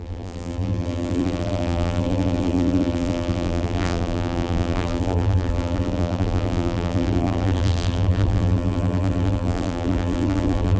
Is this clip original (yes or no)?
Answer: no